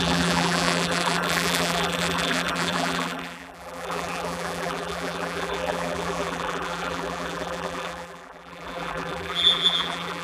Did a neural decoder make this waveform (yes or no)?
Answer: yes